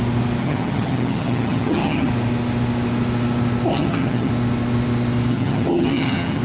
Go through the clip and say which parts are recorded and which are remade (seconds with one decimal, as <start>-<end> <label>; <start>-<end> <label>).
0.0-0.4 recorded; 0.4-2.1 remade; 2.1-3.7 recorded; 3.7-4.3 remade; 4.3-5.3 recorded; 5.3-6.4 remade